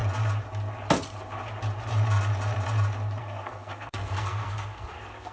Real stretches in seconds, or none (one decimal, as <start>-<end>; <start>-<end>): 0.0-3.2